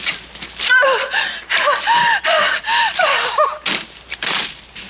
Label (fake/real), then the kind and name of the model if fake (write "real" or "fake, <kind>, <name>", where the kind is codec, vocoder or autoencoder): fake, vocoder, BigVGAN v2